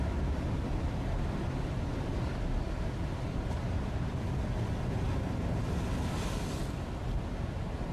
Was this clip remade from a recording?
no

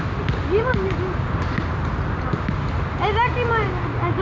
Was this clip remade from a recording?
no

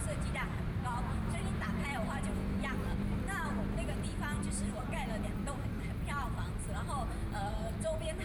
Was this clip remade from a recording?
no